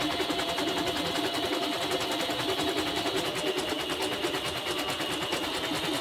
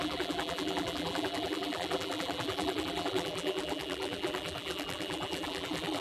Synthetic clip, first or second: second